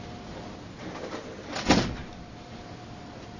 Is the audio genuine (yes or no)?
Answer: yes